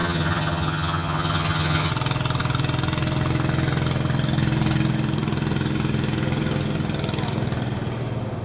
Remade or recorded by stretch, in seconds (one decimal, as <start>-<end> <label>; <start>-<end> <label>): 0.0-1.9 remade; 1.9-8.4 recorded